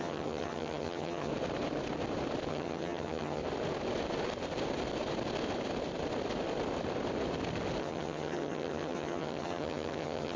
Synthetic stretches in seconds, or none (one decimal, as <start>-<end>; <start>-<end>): 0.0-1.3; 2.5-3.4; 7.8-10.4